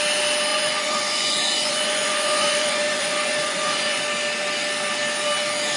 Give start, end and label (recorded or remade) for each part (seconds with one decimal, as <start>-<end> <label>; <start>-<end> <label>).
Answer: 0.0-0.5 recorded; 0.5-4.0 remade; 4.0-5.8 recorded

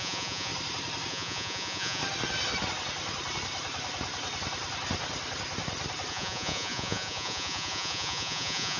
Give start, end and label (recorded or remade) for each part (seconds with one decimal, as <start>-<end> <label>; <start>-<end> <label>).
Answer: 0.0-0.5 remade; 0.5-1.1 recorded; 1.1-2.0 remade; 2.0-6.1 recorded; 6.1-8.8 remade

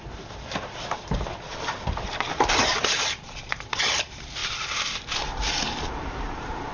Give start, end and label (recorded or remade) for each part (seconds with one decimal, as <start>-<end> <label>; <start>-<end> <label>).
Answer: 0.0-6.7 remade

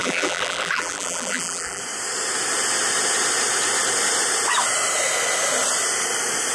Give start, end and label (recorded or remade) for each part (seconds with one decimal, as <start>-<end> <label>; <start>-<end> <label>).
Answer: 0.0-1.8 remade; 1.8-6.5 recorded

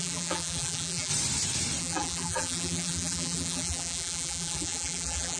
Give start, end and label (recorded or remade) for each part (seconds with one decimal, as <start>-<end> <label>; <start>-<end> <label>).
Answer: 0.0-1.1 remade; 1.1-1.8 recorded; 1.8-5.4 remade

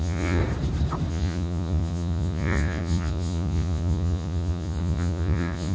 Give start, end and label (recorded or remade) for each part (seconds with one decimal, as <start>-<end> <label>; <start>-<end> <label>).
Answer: 0.0-0.4 remade; 0.4-1.1 recorded; 1.1-5.7 remade